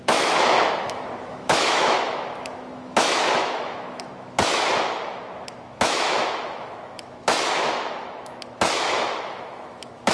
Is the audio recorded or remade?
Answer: remade